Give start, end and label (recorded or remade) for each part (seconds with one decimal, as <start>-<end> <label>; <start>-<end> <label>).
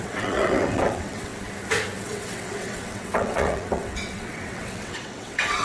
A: 0.0-1.3 remade; 1.3-2.0 recorded; 2.0-5.6 remade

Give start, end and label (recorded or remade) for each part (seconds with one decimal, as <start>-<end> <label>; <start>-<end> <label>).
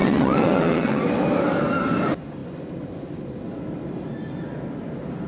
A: 0.0-1.0 remade; 1.0-5.3 recorded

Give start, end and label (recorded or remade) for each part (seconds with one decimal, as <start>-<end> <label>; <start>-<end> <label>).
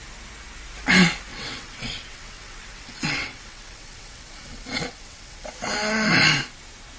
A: 0.0-1.3 recorded; 1.3-5.5 remade; 5.5-7.0 recorded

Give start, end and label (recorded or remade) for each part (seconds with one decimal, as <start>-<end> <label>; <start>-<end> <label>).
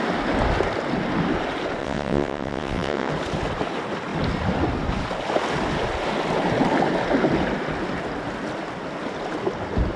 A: 0.0-1.8 recorded; 1.8-3.1 remade; 3.1-10.0 recorded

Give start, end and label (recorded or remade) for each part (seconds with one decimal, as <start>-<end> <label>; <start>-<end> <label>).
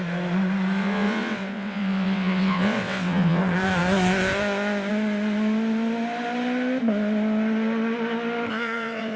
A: 0.0-0.8 recorded; 0.8-3.4 remade; 3.4-8.5 recorded; 8.5-9.2 remade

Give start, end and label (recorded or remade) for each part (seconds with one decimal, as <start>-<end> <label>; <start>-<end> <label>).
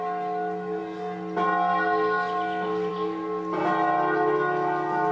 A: 0.0-5.1 recorded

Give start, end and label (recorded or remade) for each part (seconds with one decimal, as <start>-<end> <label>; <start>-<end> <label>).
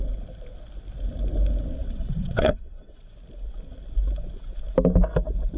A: 0.0-1.8 recorded; 1.8-3.1 remade; 3.1-5.6 recorded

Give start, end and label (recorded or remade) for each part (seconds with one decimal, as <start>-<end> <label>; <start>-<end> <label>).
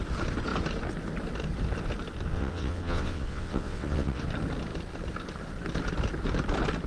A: 0.0-2.3 recorded; 2.3-4.2 remade; 4.2-6.9 recorded